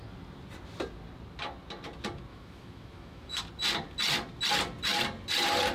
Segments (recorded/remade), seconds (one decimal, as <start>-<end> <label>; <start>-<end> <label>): 0.0-2.3 recorded; 2.3-3.4 remade; 3.4-5.7 recorded